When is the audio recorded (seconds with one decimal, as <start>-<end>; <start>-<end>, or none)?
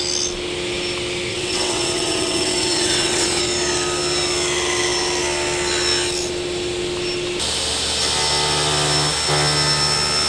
0.0-1.3; 3.4-10.3